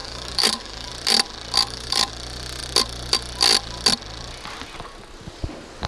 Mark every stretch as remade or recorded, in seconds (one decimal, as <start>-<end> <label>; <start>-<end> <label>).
0.0-0.9 remade; 0.9-1.6 recorded; 1.6-2.1 remade; 2.1-5.9 recorded